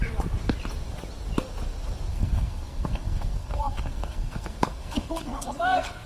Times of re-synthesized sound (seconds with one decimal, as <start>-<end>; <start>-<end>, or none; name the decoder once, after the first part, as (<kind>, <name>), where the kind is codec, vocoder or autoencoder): 2.1-6.1 (codec, SNAC)